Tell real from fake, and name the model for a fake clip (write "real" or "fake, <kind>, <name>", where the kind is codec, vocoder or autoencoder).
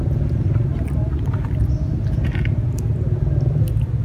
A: real